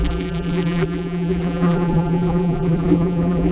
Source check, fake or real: fake